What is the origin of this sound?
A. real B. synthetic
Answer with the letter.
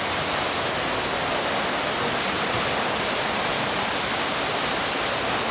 A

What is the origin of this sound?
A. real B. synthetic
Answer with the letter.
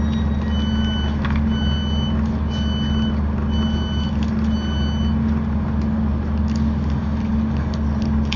A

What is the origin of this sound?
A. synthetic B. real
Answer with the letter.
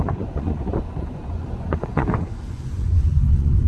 A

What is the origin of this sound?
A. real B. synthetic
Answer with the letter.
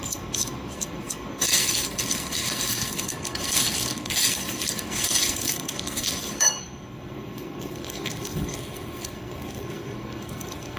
B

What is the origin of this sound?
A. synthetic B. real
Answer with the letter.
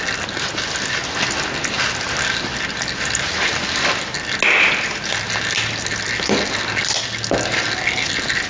B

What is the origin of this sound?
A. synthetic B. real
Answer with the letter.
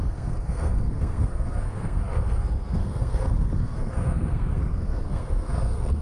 A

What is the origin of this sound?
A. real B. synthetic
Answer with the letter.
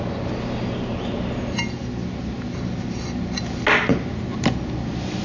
A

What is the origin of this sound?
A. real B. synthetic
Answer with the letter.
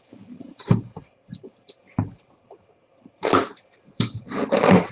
B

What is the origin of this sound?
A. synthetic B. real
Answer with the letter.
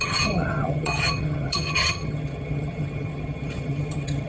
A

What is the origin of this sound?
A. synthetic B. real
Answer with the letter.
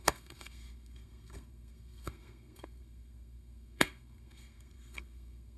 A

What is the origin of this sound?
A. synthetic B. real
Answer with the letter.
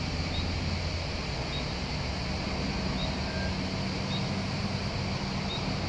B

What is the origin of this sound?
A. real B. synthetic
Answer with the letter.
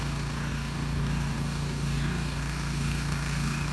B